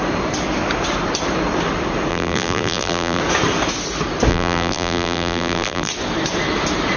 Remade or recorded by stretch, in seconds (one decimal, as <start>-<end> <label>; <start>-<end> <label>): 0.0-2.1 recorded; 2.1-3.2 remade; 3.2-4.3 recorded; 4.3-5.9 remade; 5.9-7.0 recorded